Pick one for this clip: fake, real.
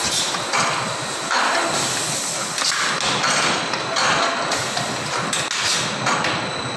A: real